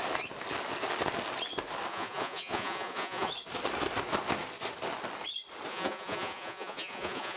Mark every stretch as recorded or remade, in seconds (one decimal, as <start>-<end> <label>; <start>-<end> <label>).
0.0-1.9 recorded; 1.9-3.3 remade; 3.3-5.7 recorded; 5.7-7.4 remade